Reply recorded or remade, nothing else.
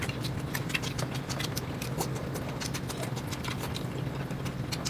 recorded